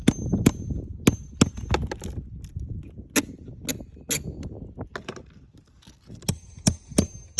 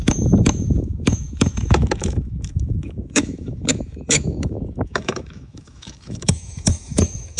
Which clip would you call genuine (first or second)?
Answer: first